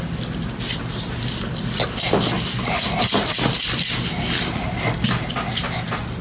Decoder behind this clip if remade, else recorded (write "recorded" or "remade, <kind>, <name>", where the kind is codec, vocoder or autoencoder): recorded